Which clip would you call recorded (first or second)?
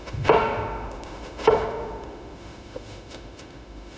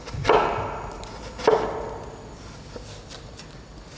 second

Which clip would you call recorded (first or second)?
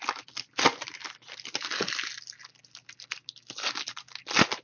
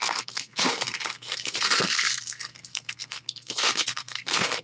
first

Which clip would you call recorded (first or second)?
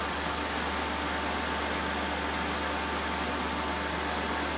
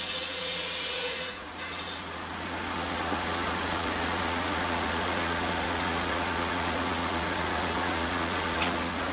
first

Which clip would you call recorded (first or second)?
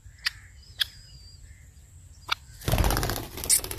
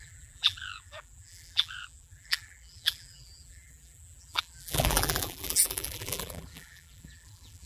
first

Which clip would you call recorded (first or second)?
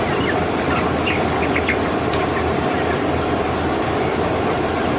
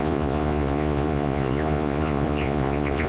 first